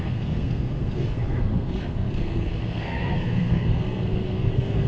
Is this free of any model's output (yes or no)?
no